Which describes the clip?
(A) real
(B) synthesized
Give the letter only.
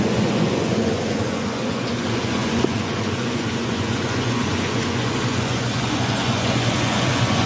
B